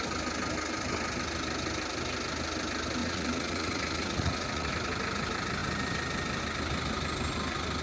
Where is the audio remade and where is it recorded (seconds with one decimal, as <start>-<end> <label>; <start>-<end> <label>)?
0.0-3.0 recorded; 3.0-4.7 remade; 4.7-7.8 recorded